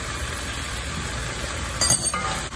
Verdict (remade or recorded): remade